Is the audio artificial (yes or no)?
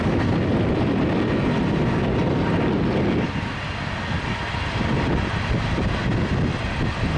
no